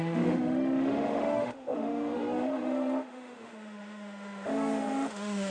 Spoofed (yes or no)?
yes